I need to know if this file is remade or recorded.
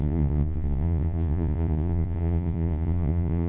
remade